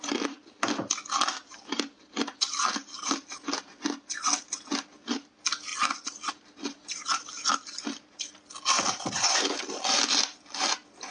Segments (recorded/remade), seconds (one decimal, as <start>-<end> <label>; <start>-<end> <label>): 0.0-11.1 recorded